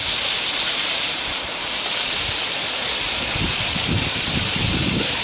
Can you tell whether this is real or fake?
fake